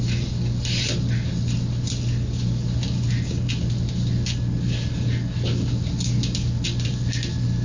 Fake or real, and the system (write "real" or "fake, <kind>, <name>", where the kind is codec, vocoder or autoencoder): real